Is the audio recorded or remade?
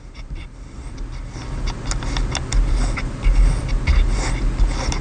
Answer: recorded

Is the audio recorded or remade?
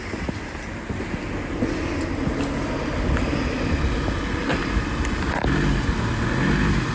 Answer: recorded